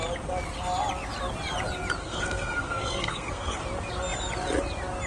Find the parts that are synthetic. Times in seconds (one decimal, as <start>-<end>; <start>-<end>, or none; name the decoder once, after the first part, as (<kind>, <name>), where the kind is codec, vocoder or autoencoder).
2.0-3.6 (codec, SNAC)